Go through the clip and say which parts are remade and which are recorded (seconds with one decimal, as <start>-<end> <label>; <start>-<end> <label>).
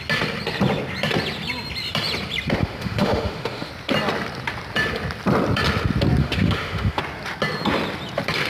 0.0-2.6 recorded; 2.6-3.7 remade; 3.7-6.2 recorded; 6.2-7.0 remade; 7.0-8.5 recorded